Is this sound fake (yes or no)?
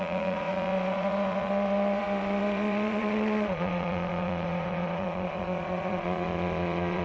yes